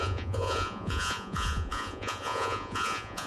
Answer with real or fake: fake